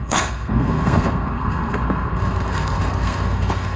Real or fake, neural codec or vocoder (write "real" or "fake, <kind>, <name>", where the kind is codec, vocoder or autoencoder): fake, codec, SNAC